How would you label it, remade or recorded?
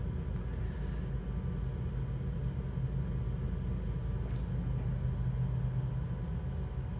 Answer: recorded